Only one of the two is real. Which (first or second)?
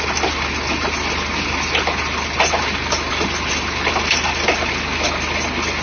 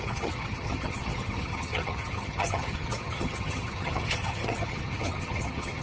first